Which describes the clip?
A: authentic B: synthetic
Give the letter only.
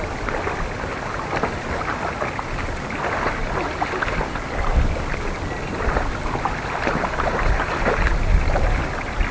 A